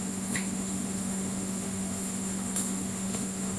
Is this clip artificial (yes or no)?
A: yes